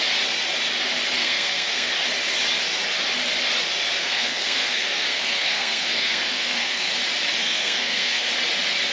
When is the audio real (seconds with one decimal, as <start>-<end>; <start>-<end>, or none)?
0.0-1.2; 1.9-4.0; 6.9-7.4; 8.3-8.9